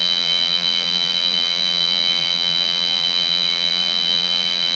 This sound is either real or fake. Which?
fake